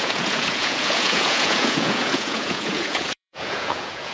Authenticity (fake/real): fake